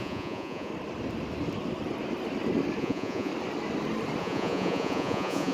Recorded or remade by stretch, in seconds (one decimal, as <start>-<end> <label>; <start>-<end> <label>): 0.0-0.7 remade; 0.7-2.8 recorded; 2.8-3.3 remade; 3.3-4.2 recorded; 4.2-5.5 remade